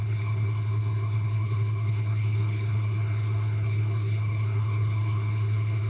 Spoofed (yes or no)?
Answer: yes